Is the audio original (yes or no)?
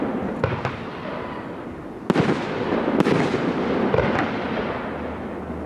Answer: yes